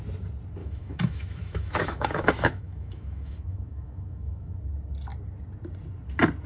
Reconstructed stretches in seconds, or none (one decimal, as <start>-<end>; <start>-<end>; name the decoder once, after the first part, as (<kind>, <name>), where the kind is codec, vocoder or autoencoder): 0.6-4.5 (autoencoder, DAC-VAE)